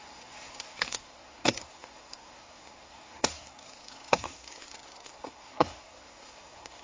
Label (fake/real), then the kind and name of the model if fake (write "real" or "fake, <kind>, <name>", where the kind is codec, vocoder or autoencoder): fake, codec, SNAC